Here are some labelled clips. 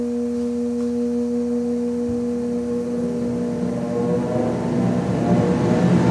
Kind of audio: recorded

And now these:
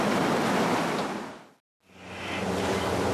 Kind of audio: recorded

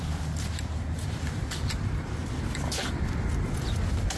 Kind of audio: recorded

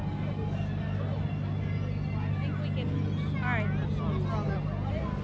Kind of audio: recorded